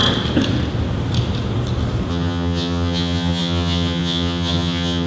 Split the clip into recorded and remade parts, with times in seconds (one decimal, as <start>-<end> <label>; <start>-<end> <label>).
0.0-2.1 recorded; 2.1-5.1 remade